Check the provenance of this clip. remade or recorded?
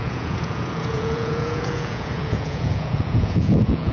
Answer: remade